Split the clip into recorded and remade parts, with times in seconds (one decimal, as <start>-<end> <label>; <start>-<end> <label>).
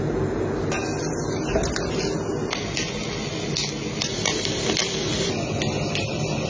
0.0-6.5 recorded